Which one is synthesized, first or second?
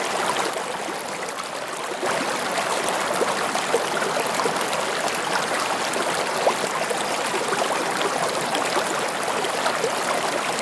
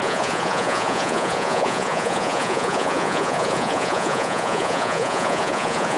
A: second